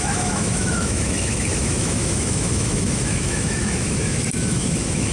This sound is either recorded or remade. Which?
remade